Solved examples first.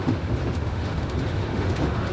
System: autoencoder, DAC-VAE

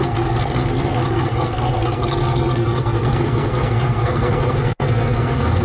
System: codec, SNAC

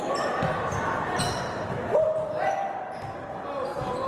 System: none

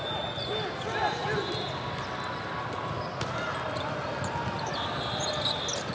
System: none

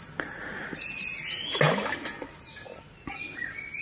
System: none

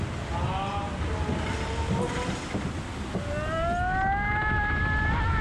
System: none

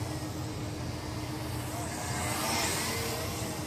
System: none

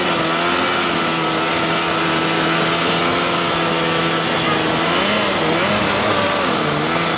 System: none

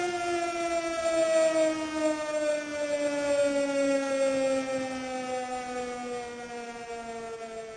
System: none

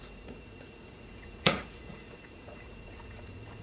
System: vocoder, Vocos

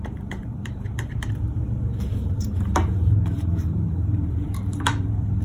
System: vocoder, BigVGAN v2